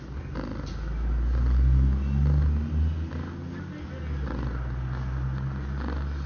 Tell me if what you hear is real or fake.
real